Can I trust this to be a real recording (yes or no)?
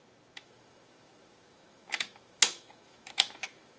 no